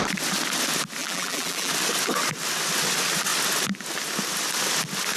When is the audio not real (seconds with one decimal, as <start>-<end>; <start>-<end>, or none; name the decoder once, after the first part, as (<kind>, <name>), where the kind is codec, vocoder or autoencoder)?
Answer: 1.0-1.7 (vocoder, BigVGAN v2)